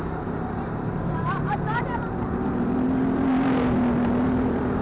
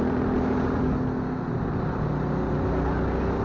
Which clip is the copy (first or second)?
first